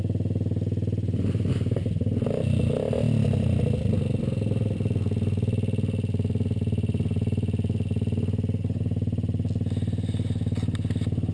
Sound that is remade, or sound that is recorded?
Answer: recorded